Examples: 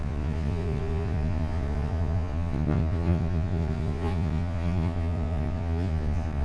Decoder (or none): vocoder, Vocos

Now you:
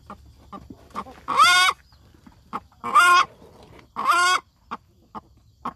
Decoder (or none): none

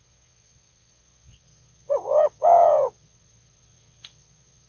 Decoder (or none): vocoder, WaveNeXt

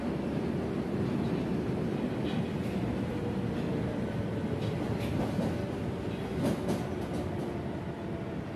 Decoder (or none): none